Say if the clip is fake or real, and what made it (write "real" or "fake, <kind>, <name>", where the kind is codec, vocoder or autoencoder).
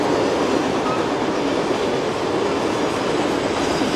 real